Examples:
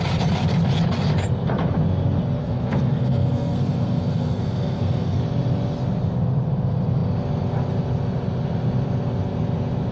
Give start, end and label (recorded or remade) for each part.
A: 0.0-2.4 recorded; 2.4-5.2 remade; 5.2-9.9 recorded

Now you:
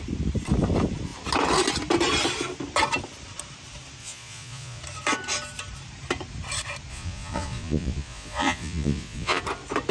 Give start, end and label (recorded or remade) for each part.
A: 0.0-4.0 recorded; 4.0-4.8 remade; 4.8-6.9 recorded; 6.9-9.4 remade; 9.4-9.9 recorded

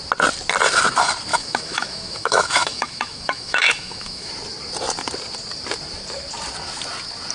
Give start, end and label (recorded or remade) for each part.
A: 0.0-1.3 recorded; 1.3-4.3 remade; 4.3-7.3 recorded

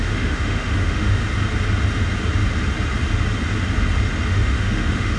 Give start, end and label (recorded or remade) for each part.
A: 0.0-1.2 remade; 1.2-4.3 recorded; 4.3-5.2 remade

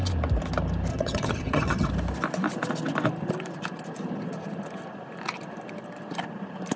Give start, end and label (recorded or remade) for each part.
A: 0.0-0.9 recorded; 0.9-1.9 remade; 1.9-6.8 recorded

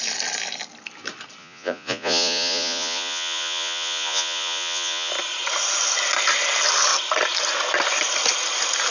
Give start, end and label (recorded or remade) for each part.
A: 0.0-1.4 recorded; 1.4-5.1 remade; 5.1-8.9 recorded

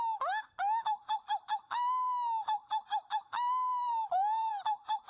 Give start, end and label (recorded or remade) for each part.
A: 0.0-3.8 recorded; 3.8-5.1 remade

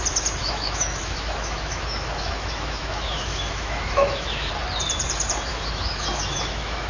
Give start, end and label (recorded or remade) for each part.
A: 0.0-0.4 recorded; 0.4-4.5 remade; 4.5-5.5 recorded; 5.5-6.9 remade